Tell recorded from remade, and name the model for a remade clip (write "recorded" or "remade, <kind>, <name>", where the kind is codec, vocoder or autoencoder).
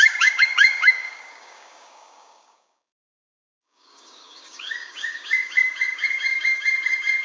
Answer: remade, codec, DAC